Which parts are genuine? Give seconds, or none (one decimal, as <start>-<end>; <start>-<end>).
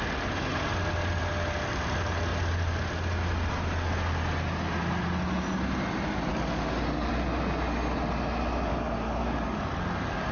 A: 0.0-6.3; 7.1-8.7